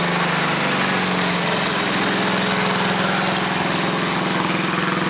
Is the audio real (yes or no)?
yes